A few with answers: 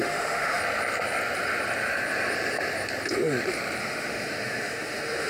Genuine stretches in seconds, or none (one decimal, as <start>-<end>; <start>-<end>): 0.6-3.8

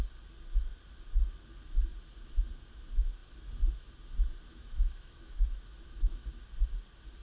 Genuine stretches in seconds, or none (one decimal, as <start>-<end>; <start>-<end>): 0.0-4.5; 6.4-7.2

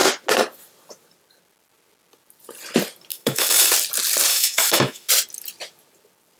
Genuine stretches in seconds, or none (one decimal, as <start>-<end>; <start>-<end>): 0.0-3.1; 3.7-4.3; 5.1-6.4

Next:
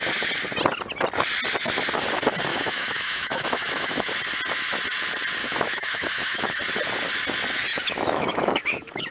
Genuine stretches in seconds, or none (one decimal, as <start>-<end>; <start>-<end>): 0.0-2.5; 4.1-5.4; 6.6-7.7